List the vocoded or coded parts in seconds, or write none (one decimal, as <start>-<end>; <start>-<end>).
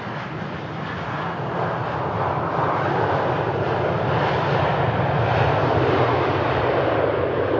none